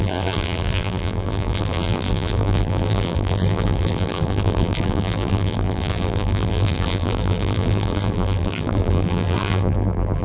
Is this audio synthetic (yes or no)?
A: yes